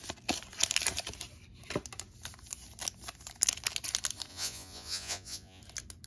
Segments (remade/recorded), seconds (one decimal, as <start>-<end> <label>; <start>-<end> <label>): 0.0-4.3 recorded; 4.3-5.6 remade; 5.6-6.1 recorded